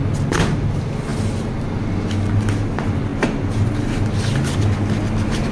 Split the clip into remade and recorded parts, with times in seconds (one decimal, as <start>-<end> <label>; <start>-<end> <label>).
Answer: 0.0-5.5 recorded